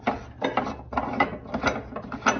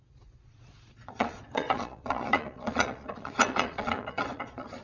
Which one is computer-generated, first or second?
second